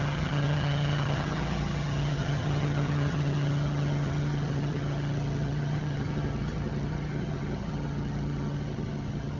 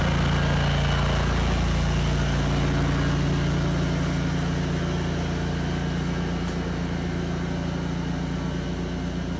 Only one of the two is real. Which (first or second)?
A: second